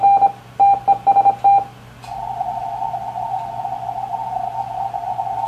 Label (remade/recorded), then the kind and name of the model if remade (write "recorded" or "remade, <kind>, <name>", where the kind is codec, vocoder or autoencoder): recorded